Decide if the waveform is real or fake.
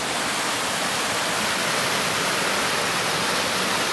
real